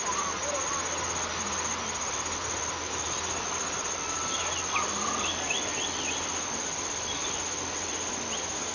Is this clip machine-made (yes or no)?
no